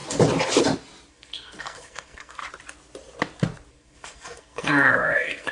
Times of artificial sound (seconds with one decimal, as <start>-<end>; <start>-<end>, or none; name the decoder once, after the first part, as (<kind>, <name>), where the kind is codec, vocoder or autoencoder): 1.1-2.4 (codec, SNAC); 3.7-5.5